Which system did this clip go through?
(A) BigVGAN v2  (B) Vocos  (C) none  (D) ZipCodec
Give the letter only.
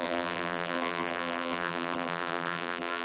A